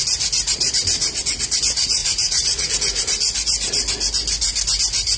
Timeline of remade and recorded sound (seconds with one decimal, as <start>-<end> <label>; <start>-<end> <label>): 0.0-2.0 recorded; 2.0-2.7 remade; 2.7-5.2 recorded